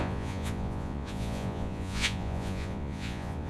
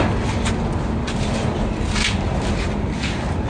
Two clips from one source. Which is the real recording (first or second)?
second